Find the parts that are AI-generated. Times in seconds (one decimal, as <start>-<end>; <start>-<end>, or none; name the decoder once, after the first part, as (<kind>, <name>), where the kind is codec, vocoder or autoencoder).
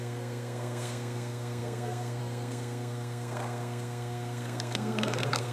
0.0-5.5 (codec, SNAC)